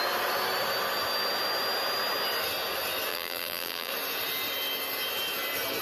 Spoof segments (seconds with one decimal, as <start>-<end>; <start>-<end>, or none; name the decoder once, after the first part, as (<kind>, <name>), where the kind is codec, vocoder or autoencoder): 3.1-3.9 (vocoder, BigVGAN v2)

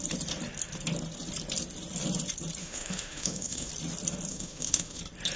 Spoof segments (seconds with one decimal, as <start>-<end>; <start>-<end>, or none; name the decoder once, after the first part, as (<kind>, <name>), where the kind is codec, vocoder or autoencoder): 2.6-3.7 (autoencoder, DAC-VAE); 4.3-5.0

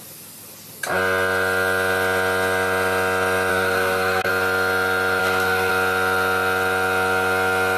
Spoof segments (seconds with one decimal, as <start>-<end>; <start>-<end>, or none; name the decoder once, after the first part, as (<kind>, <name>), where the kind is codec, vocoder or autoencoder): 3.5-4.3 (codec, SNAC); 5.2-5.7

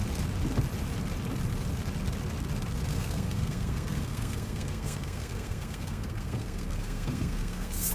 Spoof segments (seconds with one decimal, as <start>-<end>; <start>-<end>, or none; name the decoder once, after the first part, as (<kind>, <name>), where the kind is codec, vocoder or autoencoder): 2.9-7.9 (codec, SNAC)